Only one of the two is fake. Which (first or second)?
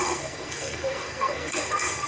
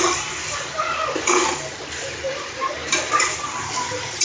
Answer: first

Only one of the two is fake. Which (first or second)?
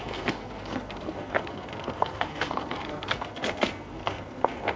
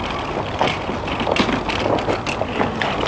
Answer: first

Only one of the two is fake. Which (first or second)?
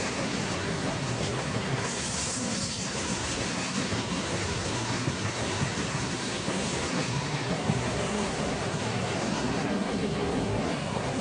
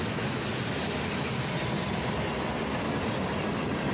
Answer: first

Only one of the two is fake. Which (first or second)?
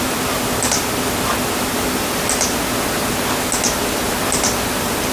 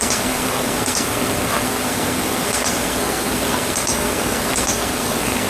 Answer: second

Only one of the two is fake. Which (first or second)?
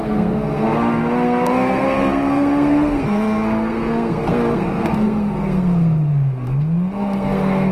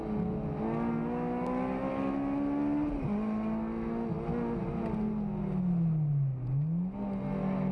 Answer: first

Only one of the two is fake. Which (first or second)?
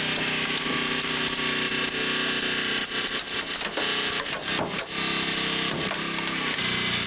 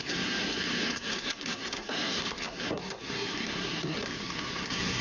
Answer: second